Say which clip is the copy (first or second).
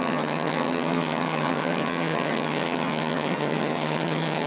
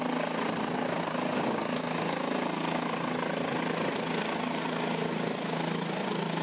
first